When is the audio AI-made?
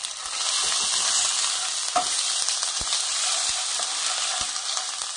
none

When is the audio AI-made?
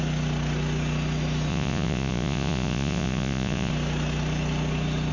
1.5-3.7 (vocoder, Vocos)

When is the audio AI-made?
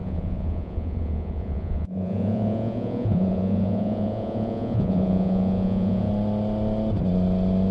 0.0-6.1 (vocoder, Vocos)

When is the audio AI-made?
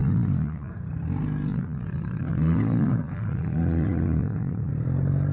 0.0-0.7 (vocoder, Vocos); 1.5-4.7